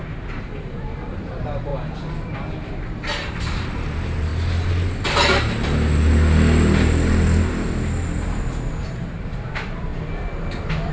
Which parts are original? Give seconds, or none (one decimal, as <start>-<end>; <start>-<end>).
1.7-2.3; 4.3-8.8; 9.9-10.9